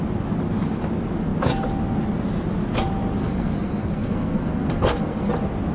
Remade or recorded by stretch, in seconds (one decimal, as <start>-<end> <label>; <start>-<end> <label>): 0.0-3.2 recorded; 3.2-5.3 remade; 5.3-5.7 recorded